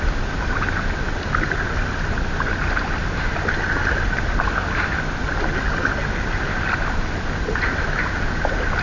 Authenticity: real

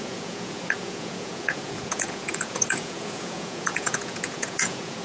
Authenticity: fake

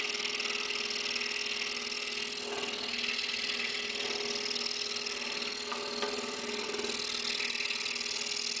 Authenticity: real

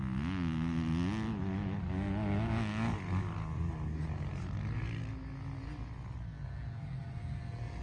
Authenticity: real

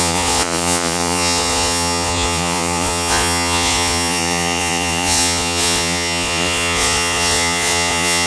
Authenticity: fake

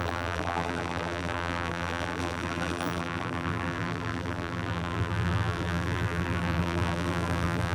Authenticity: fake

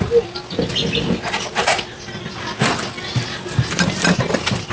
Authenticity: real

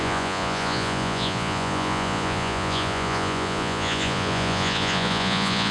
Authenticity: fake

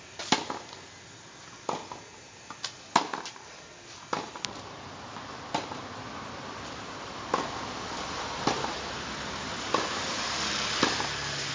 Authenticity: real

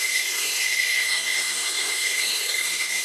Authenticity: fake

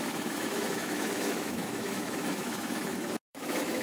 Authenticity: fake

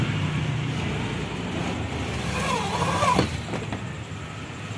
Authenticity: real